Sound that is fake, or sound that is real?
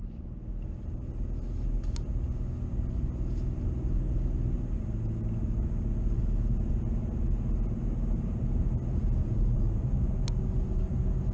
real